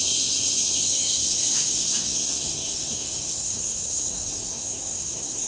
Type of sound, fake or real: fake